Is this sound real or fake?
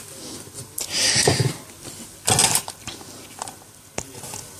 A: real